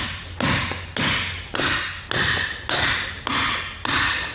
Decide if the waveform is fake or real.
real